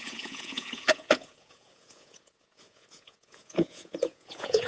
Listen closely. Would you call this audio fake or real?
fake